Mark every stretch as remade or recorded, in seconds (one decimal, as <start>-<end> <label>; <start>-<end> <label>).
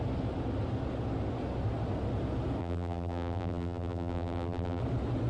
0.0-2.6 recorded; 2.6-4.8 remade; 4.8-5.3 recorded